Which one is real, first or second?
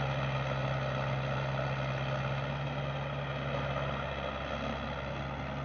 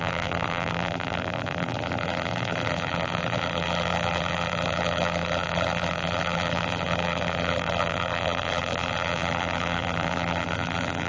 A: first